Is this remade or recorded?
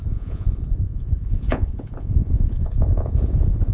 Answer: remade